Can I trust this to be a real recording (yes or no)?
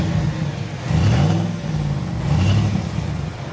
yes